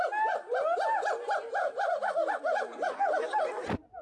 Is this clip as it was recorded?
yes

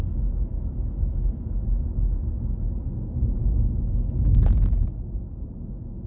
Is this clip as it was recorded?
yes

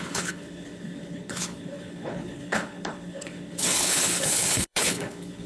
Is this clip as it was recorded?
no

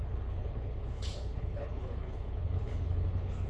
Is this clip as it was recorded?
no